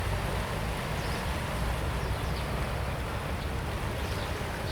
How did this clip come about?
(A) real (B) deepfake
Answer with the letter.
A